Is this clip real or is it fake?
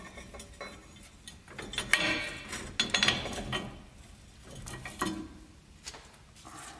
real